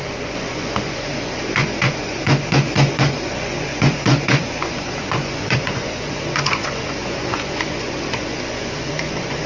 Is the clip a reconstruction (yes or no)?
yes